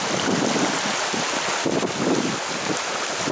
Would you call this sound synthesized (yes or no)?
no